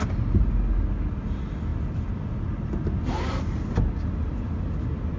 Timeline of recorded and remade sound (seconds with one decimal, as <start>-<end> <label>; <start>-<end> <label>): 0.0-5.2 recorded